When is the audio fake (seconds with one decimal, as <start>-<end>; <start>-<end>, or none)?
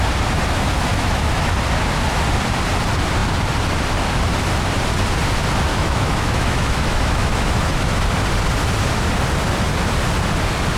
0.9-1.5; 5.7-7.9